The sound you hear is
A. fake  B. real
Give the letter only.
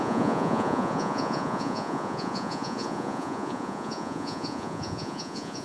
A